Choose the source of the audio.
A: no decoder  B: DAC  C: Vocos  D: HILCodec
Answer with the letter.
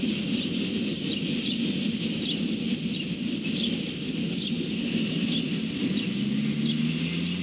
A